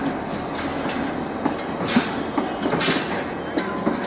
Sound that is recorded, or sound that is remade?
recorded